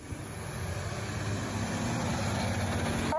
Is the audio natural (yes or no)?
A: yes